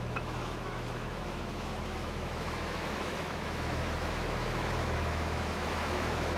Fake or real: fake